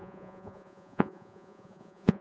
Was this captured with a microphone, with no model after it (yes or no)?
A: no